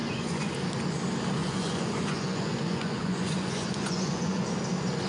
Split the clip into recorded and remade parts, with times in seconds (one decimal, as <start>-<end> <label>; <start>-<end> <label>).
0.0-0.5 remade; 0.5-1.4 recorded; 1.4-4.5 remade; 4.5-5.1 recorded